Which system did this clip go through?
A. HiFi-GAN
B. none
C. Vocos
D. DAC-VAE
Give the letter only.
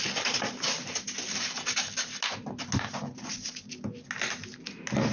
B